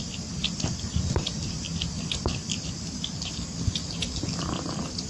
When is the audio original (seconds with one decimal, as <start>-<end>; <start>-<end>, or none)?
0.0-5.1